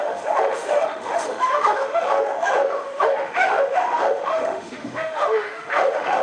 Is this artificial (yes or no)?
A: yes